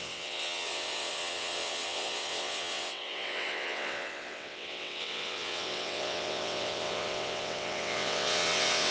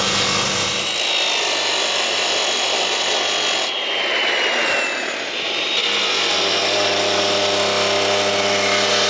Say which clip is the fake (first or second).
first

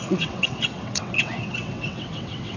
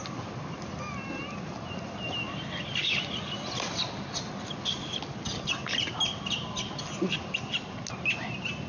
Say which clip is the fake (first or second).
first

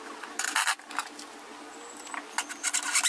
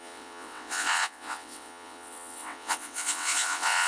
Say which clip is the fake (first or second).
second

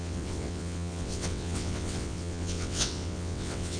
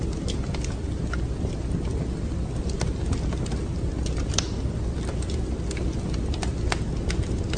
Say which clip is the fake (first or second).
first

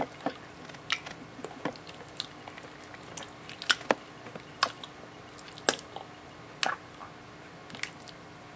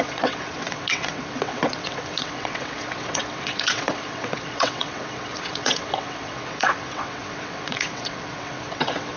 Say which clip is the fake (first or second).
second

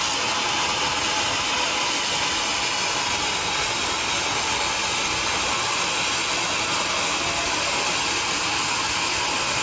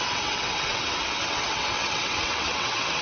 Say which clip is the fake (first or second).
second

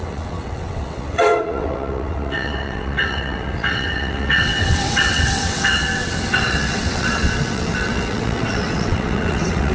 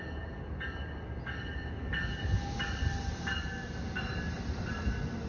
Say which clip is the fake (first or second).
first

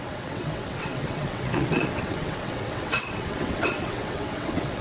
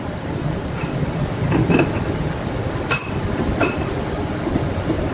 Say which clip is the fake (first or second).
first